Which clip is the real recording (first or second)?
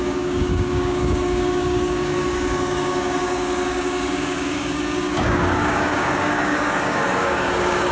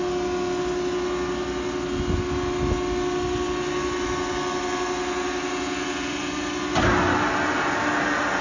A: second